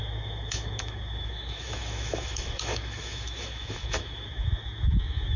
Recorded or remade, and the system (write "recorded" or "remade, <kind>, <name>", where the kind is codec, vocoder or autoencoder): remade, autoencoder, DAC-VAE